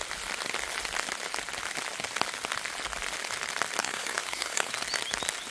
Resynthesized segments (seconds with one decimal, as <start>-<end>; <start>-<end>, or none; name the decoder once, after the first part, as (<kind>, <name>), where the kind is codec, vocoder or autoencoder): 3.8-4.7 (codec, SNAC)